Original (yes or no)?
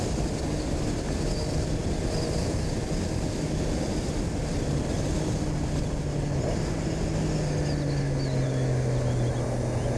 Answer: yes